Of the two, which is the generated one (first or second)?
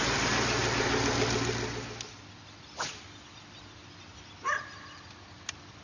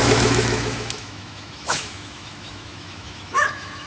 second